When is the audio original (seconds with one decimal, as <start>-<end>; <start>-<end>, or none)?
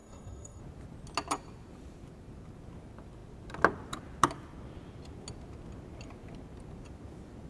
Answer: 0.6-7.5